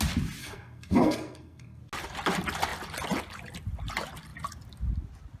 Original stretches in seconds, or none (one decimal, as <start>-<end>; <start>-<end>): 0.0-0.4; 1.8-5.4